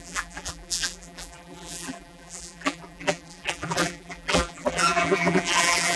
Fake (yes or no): yes